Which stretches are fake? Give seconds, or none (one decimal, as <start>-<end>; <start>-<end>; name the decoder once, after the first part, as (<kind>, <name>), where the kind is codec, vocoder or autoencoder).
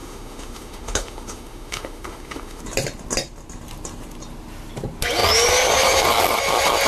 0.0-2.6 (autoencoder, DAC-VAE)